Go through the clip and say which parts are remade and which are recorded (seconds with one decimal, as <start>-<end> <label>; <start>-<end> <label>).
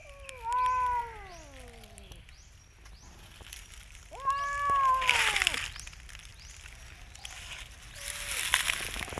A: 0.0-9.2 recorded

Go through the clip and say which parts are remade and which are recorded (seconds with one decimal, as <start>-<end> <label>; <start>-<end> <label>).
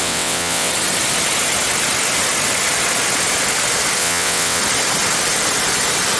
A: 0.0-0.7 remade; 0.7-4.0 recorded; 4.0-4.6 remade; 4.6-6.2 recorded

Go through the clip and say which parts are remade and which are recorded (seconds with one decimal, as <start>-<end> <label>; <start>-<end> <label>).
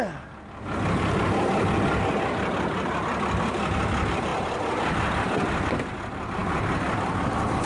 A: 0.0-7.7 recorded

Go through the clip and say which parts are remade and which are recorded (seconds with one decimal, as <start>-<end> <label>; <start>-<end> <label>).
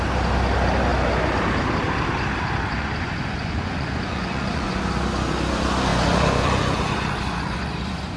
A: 0.0-2.8 recorded; 2.8-4.8 remade; 4.8-5.9 recorded; 5.9-8.2 remade